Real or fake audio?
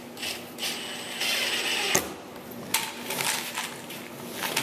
real